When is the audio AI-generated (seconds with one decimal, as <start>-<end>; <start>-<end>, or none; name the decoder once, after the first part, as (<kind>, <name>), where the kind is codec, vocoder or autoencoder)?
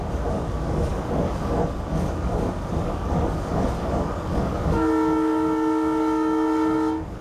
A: 0.0-7.2 (codec, DAC)